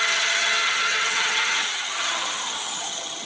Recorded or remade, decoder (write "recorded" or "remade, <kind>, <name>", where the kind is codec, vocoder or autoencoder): remade, vocoder, HiFi-GAN